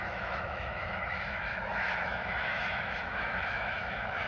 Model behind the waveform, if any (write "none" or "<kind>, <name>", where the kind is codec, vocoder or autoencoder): autoencoder, DAC-VAE